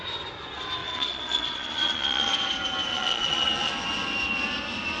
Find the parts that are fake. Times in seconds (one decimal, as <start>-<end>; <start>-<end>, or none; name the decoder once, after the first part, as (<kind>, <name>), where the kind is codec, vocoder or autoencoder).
0.8-2.3 (vocoder, Vocos); 2.9-3.7